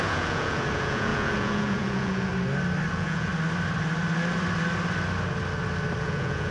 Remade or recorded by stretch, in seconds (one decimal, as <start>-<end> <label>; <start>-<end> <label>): 0.0-2.3 remade; 2.3-2.9 recorded; 2.9-3.3 remade; 3.3-6.0 recorded; 6.0-6.5 remade